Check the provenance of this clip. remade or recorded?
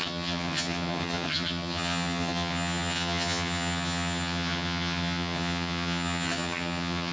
remade